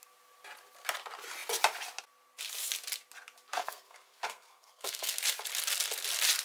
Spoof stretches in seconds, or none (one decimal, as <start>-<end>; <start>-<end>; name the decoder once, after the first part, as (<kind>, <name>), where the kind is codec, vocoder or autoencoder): 3.6-5.2 (codec, SNAC)